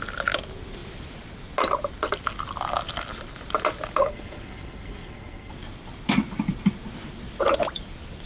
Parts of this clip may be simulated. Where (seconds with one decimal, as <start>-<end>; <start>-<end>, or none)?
4.0-5.5